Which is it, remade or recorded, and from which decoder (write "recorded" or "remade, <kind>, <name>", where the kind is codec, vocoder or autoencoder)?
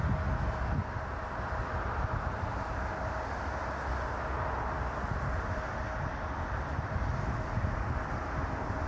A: recorded